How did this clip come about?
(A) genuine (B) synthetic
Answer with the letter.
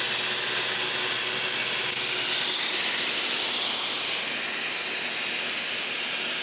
A